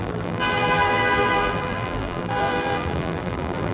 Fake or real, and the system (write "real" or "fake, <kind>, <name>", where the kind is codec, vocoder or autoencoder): fake, vocoder, BigVGAN v2